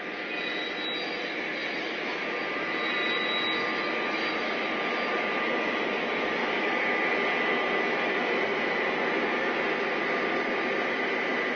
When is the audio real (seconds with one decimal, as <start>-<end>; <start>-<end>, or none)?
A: 0.0-6.4; 7.1-11.6